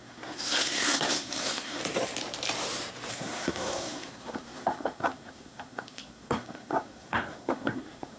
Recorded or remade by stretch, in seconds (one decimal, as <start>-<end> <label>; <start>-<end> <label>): 0.0-1.8 remade; 1.8-3.1 recorded; 3.1-8.2 remade